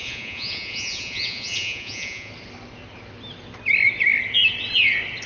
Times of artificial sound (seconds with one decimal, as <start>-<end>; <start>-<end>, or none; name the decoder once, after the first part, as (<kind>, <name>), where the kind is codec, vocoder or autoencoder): 0.0-2.3 (vocoder, Vocos)